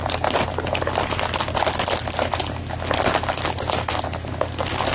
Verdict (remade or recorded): recorded